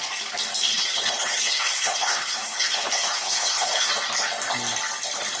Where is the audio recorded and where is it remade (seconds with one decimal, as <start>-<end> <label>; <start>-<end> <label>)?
0.0-0.7 recorded; 0.7-3.9 remade; 3.9-5.4 recorded